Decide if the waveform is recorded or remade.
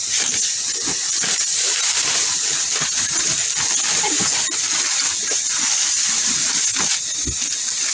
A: recorded